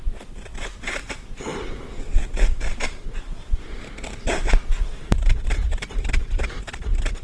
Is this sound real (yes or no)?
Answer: no